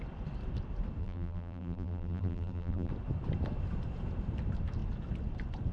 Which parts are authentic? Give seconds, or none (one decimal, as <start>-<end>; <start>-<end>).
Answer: 0.0-1.0; 2.9-5.7